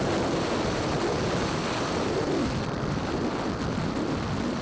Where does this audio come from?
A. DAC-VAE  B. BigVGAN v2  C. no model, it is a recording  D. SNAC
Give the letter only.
B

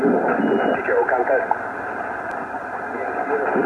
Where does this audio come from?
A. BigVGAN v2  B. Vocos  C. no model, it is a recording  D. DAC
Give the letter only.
C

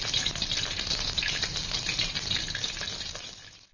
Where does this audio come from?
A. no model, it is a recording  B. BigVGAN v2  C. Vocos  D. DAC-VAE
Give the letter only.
A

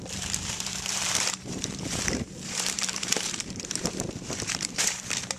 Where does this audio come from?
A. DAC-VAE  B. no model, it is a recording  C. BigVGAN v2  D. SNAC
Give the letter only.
C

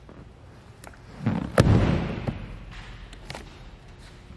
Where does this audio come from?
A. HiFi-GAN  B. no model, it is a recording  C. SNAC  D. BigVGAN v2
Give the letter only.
D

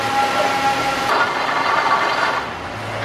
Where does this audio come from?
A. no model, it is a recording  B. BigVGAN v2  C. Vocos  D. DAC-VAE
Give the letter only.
A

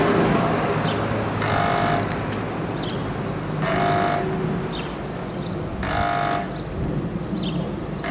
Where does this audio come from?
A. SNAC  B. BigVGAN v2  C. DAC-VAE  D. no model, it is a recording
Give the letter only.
D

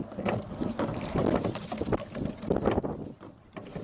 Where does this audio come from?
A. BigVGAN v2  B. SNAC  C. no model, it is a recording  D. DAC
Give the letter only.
A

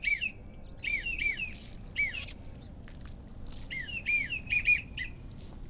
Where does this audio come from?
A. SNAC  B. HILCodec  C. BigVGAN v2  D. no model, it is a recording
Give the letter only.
D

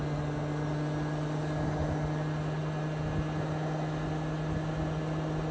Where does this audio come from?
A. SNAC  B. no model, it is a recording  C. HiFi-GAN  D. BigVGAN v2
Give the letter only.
B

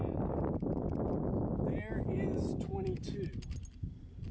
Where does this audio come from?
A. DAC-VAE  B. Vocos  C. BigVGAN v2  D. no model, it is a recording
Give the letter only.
D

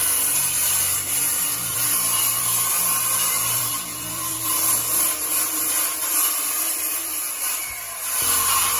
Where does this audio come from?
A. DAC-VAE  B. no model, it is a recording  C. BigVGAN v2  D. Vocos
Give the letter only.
C